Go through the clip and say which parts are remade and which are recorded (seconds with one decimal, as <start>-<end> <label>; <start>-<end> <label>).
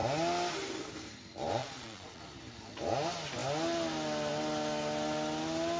0.0-1.6 recorded; 1.6-2.2 remade; 2.2-5.8 recorded